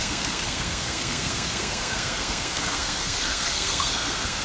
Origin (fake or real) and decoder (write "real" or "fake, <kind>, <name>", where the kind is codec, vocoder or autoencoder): fake, codec, SNAC